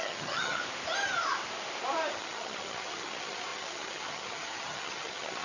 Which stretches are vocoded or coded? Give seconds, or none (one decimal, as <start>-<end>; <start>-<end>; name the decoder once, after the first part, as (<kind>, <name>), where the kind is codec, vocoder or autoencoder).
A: 0.0-0.6 (vocoder, HiFi-GAN); 2.1-5.4